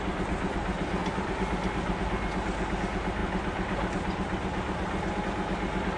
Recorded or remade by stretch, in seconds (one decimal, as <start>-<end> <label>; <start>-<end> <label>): 0.0-6.0 recorded